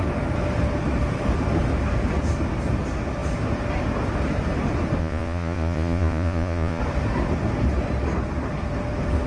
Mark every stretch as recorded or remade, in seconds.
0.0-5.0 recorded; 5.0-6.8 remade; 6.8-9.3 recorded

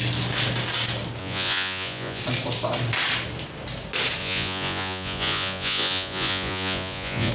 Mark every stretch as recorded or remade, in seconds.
0.0-1.2 recorded; 1.2-2.2 remade; 2.2-4.2 recorded; 4.2-7.3 remade

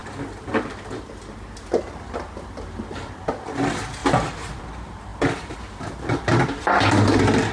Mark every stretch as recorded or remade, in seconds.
0.0-4.0 recorded; 4.0-4.6 remade; 4.6-7.5 recorded

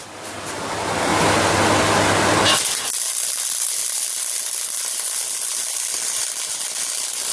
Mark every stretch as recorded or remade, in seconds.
0.0-7.3 recorded

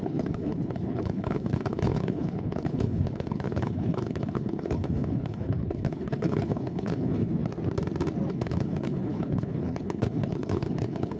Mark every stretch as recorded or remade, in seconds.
0.0-7.4 remade; 7.4-8.3 recorded; 8.3-11.2 remade

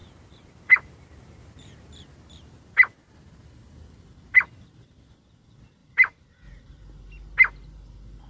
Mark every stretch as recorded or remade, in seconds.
0.0-1.9 remade; 1.9-5.8 recorded; 5.8-6.7 remade; 6.7-8.3 recorded

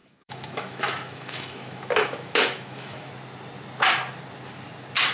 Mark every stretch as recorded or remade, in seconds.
0.0-3.1 remade; 3.1-5.1 recorded